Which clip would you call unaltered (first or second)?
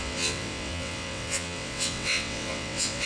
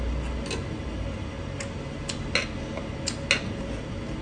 second